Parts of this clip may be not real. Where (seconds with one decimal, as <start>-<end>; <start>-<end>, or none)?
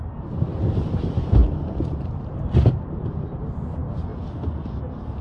1.4-2.4